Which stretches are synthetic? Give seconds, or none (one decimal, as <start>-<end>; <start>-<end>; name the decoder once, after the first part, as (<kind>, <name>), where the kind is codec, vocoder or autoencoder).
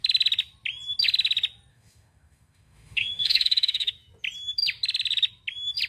1.7-3.9 (autoencoder, DAC-VAE)